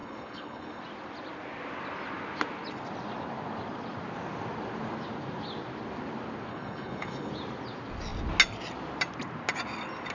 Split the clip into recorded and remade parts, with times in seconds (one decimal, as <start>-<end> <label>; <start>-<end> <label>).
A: 0.0-0.8 remade; 0.8-6.5 recorded; 6.5-7.3 remade; 7.3-10.1 recorded